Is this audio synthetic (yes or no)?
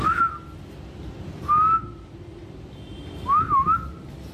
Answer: no